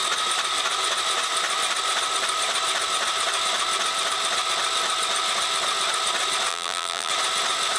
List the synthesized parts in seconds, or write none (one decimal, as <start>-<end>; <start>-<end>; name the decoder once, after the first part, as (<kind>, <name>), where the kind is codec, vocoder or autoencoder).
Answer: 6.5-7.1 (vocoder, BigVGAN v2)